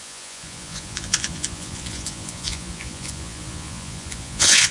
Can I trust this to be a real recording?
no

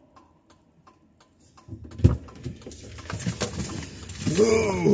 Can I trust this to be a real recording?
yes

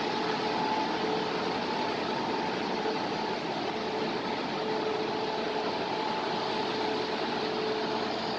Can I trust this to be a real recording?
yes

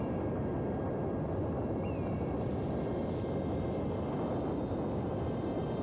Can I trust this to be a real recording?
yes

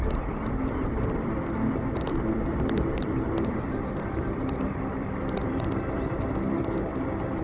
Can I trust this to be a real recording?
no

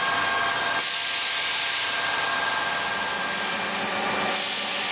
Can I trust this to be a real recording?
yes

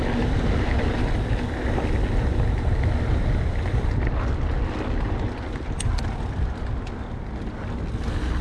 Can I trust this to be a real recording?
yes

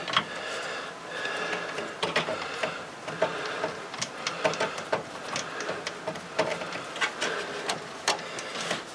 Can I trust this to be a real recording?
yes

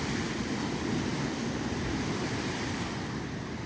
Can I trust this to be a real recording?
yes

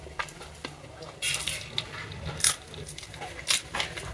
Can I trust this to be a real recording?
yes